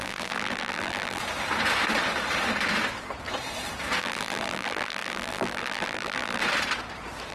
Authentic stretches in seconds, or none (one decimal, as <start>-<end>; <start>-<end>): 1.2-4.0; 6.4-7.3